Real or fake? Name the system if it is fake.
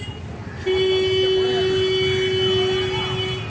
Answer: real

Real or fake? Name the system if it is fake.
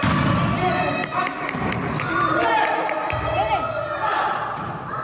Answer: real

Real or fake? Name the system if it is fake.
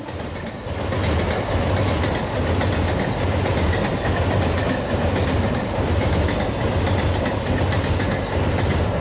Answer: real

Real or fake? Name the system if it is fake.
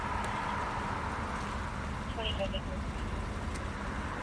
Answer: real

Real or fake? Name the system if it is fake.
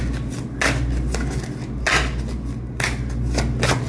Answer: real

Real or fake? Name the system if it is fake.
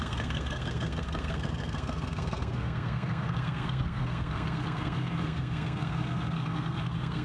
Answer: fake, codec, SNAC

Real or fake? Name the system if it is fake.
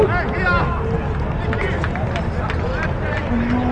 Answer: real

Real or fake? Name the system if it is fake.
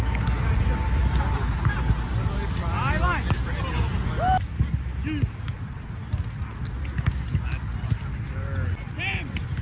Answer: real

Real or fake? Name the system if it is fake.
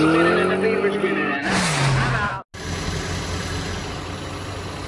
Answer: real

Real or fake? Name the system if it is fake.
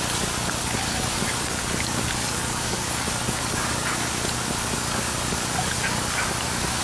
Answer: fake, codec, DAC